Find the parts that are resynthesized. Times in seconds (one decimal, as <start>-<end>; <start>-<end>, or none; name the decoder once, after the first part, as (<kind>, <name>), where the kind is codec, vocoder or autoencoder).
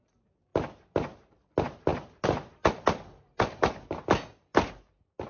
none